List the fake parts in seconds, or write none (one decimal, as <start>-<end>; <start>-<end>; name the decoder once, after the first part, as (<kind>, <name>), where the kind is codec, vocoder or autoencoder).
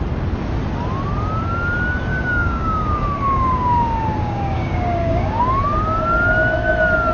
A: 2.1-5.4 (codec, DAC)